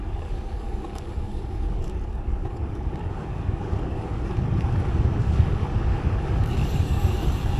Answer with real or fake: fake